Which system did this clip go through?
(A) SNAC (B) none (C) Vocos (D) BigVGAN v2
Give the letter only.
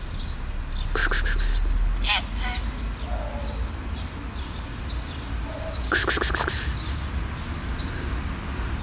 B